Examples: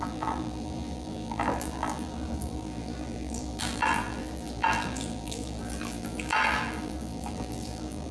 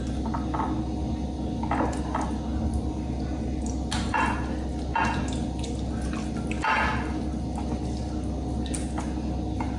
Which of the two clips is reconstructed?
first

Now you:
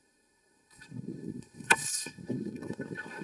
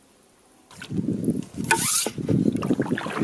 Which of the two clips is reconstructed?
first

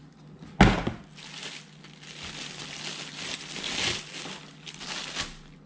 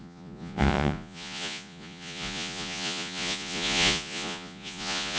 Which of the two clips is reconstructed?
second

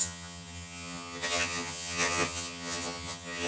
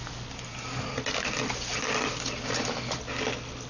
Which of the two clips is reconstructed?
first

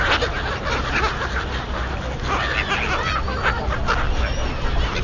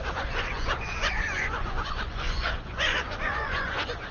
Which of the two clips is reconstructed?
second